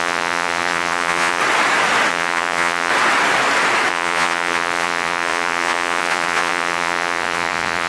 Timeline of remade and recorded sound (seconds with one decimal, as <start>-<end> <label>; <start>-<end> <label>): 0.0-1.4 remade; 1.4-2.1 recorded; 2.1-2.9 remade; 2.9-3.9 recorded; 3.9-7.9 remade